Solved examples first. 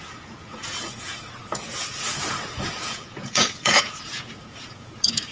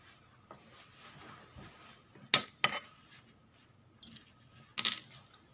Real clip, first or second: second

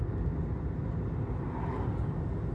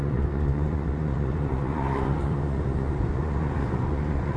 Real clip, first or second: first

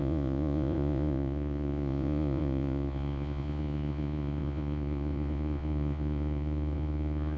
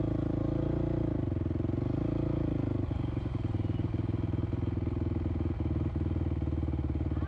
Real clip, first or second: second